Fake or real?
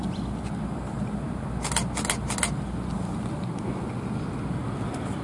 real